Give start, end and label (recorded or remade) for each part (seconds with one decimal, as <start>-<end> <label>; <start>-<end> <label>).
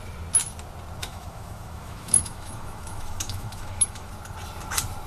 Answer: 0.0-1.0 recorded; 1.0-4.1 remade; 4.1-5.1 recorded